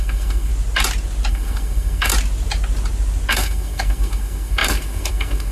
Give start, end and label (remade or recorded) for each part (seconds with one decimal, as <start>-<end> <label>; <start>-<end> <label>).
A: 0.0-0.5 remade; 0.5-1.3 recorded; 1.3-2.1 remade; 2.1-3.3 recorded; 3.3-5.5 remade